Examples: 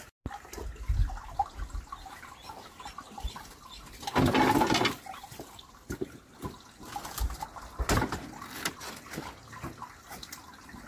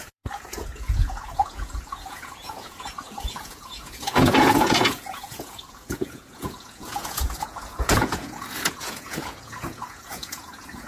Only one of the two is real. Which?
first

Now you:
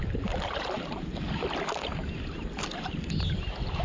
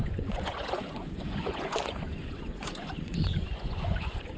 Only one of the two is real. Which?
first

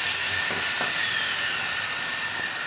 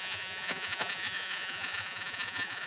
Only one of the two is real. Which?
first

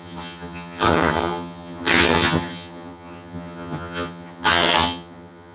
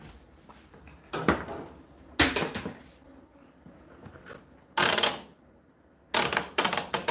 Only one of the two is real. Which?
second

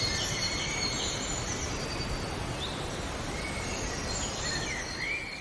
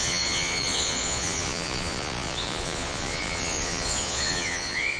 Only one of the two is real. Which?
first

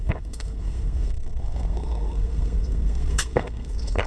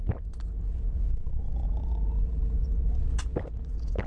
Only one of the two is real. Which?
second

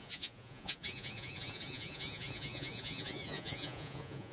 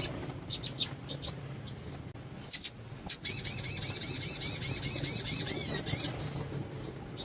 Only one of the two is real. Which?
second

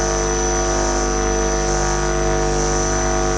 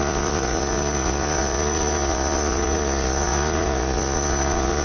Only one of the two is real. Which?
first